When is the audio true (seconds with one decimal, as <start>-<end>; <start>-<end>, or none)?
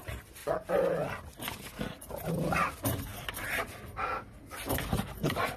0.0-5.6